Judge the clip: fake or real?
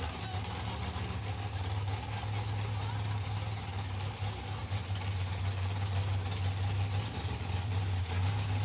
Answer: real